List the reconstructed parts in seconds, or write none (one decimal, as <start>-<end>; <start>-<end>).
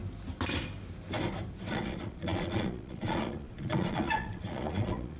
1.7-5.2